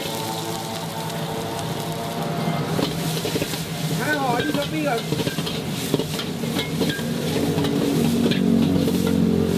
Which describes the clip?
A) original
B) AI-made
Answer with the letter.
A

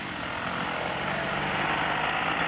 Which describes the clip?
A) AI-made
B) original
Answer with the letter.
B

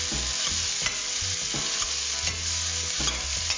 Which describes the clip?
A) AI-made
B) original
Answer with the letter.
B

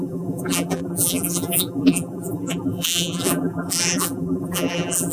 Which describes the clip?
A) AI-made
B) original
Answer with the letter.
A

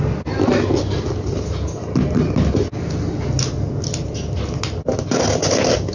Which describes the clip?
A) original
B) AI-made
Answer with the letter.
A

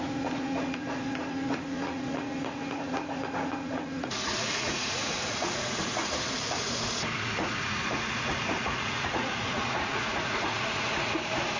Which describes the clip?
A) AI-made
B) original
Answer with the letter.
A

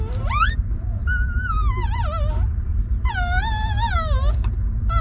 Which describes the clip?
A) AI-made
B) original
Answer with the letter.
B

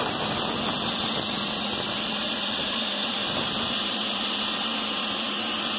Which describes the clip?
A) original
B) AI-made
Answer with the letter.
A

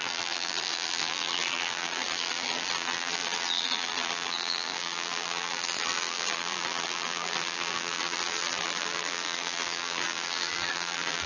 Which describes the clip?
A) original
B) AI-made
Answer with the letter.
B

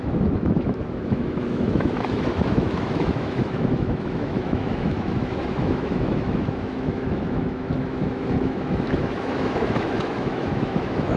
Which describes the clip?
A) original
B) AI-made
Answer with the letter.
B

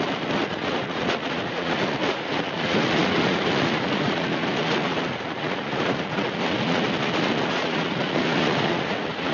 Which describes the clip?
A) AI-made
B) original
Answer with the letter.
A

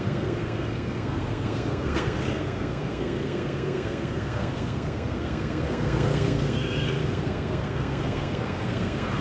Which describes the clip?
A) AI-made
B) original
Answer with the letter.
A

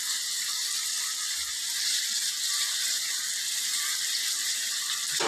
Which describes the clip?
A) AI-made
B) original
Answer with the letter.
B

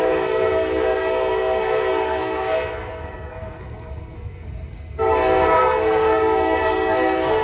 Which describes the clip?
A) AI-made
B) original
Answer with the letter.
A